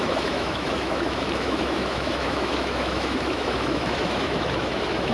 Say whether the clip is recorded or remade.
remade